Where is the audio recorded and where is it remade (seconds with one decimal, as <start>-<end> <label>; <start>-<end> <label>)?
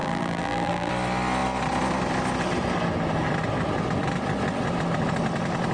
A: 0.0-0.9 remade; 0.9-5.7 recorded